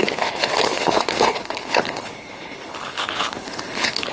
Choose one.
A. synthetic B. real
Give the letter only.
A